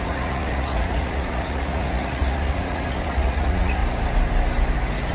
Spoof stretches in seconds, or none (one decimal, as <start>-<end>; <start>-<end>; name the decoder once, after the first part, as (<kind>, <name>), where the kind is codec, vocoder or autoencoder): 0.0-3.8 (vocoder, Vocos)